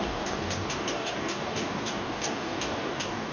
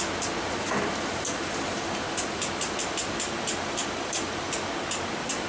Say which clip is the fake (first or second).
first